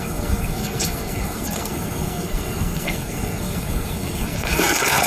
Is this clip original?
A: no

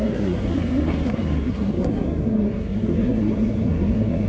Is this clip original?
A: no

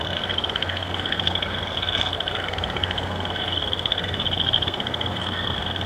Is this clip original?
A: no